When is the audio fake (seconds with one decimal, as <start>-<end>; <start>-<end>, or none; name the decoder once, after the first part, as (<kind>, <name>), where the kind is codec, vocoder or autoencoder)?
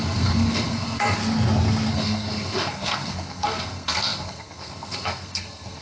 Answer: 0.0-1.2 (codec, SNAC); 1.9-5.8